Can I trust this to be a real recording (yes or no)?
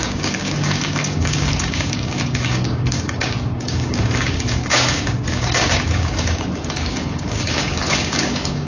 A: no